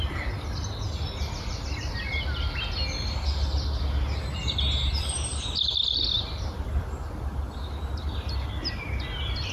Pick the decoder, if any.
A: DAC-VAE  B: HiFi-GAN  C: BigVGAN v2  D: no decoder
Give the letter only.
D